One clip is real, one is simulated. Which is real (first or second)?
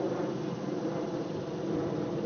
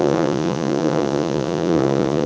first